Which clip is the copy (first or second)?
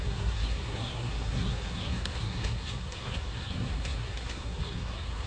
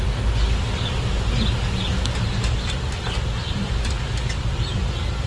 first